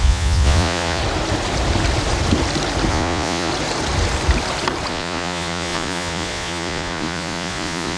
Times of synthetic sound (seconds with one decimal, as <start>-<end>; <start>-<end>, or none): 0.0-1.0; 2.9-3.5; 4.9-8.0